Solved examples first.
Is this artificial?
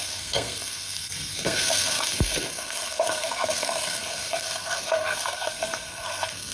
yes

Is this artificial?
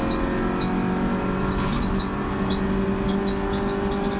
no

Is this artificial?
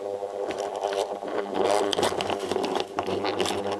no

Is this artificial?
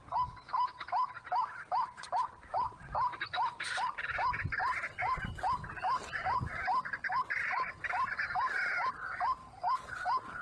no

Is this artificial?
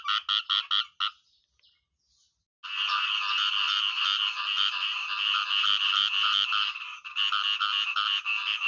no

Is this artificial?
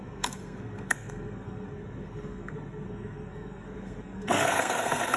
yes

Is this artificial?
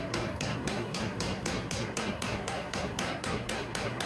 yes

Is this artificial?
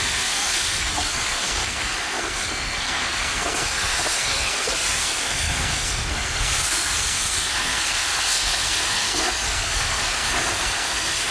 yes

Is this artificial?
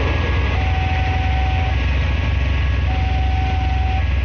no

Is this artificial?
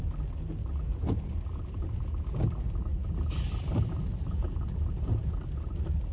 no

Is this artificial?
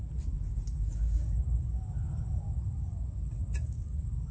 no